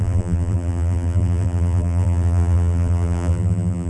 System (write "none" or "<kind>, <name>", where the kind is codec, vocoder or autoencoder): vocoder, BigVGAN v2